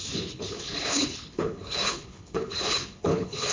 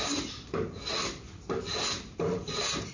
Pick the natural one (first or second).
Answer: second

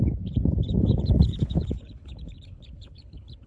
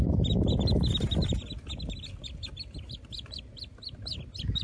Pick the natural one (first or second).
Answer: second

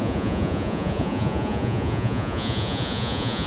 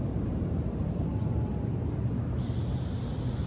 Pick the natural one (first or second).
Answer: second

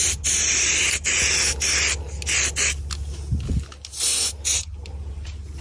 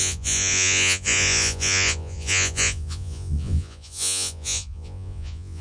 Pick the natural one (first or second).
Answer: first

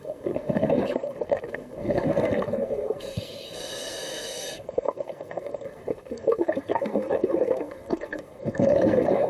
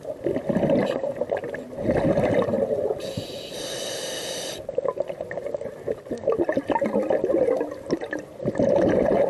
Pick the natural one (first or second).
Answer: second